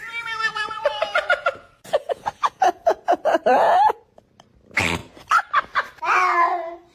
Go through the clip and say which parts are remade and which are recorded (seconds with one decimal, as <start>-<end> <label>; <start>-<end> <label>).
0.0-0.5 recorded; 0.5-4.2 remade; 4.2-6.9 recorded